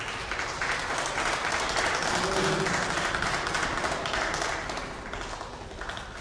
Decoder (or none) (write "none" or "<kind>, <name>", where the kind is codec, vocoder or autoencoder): none